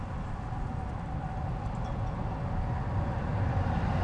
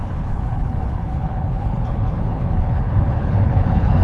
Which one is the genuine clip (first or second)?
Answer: first